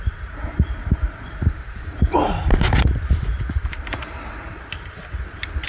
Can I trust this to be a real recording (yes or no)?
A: yes